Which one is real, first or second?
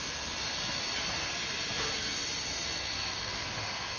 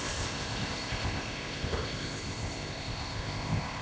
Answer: first